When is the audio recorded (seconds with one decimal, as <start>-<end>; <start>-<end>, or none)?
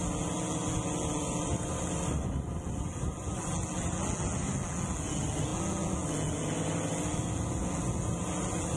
0.0-8.8